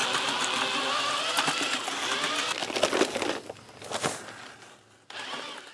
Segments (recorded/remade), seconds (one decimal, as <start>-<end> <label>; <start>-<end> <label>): 0.0-5.7 recorded